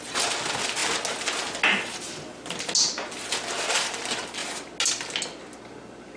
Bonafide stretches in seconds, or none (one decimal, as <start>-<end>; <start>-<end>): 0.0-6.2

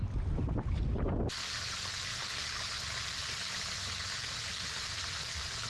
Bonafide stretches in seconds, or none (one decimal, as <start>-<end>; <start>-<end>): 0.0-2.1; 2.7-5.7

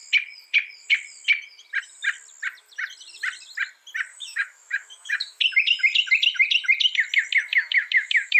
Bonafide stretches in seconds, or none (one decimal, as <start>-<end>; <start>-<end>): 0.0-4.1; 5.4-7.5

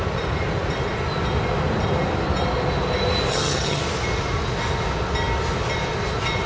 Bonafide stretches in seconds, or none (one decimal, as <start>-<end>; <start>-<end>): 0.0-3.3; 3.8-6.5

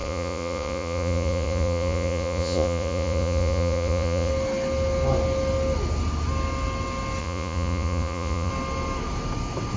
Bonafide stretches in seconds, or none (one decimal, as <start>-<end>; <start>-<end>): 4.3-7.2; 8.5-9.8